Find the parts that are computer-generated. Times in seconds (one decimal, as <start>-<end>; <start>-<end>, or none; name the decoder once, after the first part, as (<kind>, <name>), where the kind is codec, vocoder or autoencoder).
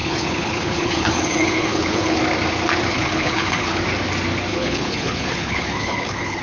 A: 0.0-2.2 (codec, HILCodec); 2.9-3.8; 4.5-6.4